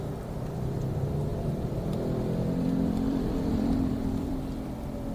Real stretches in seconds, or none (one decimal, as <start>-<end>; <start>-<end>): 0.0-1.3; 4.4-5.1